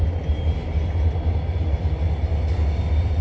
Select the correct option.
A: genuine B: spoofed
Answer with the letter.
A